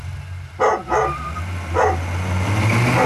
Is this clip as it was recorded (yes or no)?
yes